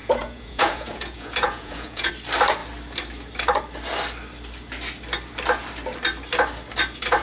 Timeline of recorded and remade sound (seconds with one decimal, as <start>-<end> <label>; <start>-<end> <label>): 0.0-2.1 remade; 2.1-7.2 recorded